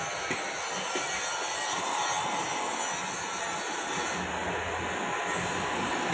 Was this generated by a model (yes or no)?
no